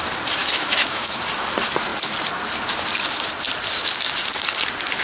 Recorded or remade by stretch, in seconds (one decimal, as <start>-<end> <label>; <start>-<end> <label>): 0.0-0.4 recorded; 0.4-1.2 remade; 1.2-5.0 recorded